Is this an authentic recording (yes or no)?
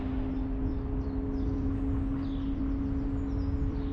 yes